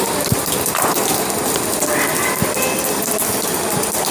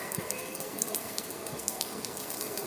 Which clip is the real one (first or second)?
first